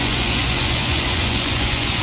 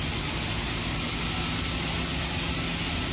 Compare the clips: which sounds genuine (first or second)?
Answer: second